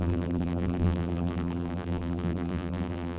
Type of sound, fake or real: fake